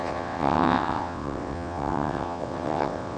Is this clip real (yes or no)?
no